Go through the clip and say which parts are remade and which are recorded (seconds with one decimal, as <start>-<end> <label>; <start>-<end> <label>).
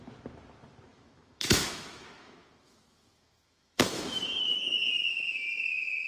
0.0-0.9 recorded; 0.9-4.6 remade; 4.6-6.1 recorded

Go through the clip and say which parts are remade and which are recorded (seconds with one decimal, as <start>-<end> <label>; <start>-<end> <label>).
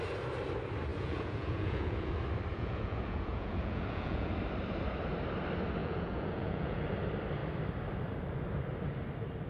0.0-0.9 recorded; 0.9-2.1 remade; 2.1-2.5 recorded; 2.5-4.3 remade; 4.3-5.8 recorded; 5.8-6.8 remade; 6.8-9.5 recorded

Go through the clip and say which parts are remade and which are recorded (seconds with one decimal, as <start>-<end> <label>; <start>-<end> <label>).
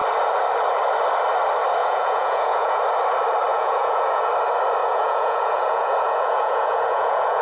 0.0-1.8 recorded; 1.8-2.8 remade; 2.8-3.5 recorded; 3.5-4.3 remade; 4.3-4.8 recorded; 4.8-7.4 remade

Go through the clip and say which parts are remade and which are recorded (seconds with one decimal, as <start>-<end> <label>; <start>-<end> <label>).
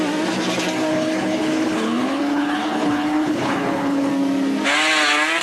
0.0-0.9 recorded; 0.9-4.1 remade; 4.1-5.4 recorded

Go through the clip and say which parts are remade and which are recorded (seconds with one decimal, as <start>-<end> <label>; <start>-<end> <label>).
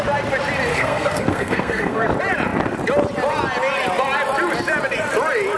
0.0-0.7 recorded; 0.7-2.0 remade; 2.0-5.6 recorded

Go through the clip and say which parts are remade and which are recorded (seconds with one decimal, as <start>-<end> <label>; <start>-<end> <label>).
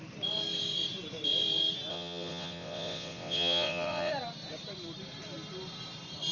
0.0-1.9 recorded; 1.9-4.1 remade; 4.1-6.3 recorded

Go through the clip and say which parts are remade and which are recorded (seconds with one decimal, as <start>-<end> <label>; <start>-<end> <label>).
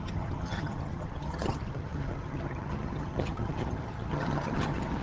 0.0-5.0 remade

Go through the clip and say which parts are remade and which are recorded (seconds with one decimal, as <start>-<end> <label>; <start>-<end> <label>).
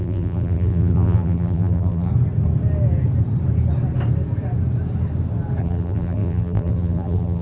0.0-2.1 remade; 2.1-5.6 recorded; 5.6-7.4 remade